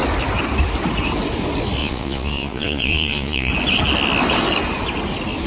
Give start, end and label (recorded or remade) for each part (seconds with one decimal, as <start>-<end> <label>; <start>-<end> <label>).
0.0-1.8 recorded; 1.8-3.5 remade; 3.5-5.5 recorded